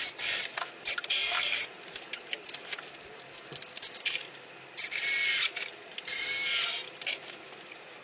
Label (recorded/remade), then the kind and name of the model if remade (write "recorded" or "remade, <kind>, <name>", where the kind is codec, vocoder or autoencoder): recorded